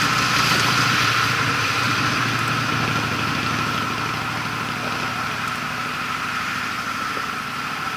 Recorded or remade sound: recorded